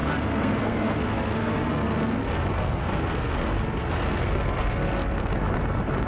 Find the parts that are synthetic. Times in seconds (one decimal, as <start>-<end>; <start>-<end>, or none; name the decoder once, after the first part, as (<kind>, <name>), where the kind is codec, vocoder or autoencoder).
0.0-5.3 (codec, SNAC)